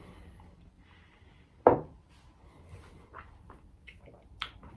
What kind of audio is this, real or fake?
real